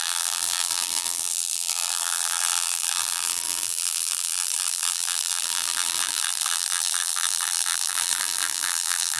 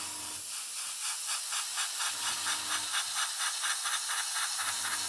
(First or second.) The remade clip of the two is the first